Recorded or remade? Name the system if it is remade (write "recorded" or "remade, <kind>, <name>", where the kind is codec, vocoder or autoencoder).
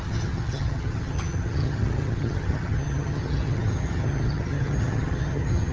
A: remade, vocoder, HiFi-GAN